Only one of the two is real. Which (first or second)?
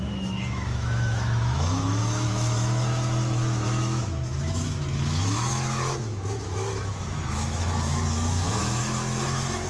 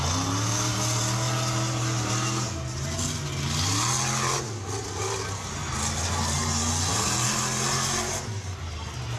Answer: second